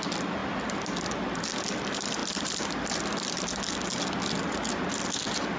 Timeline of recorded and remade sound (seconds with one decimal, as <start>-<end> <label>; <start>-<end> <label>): 0.0-5.6 recorded